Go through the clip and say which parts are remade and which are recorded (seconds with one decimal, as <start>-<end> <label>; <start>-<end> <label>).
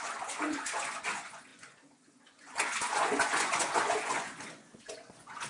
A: 0.0-5.5 remade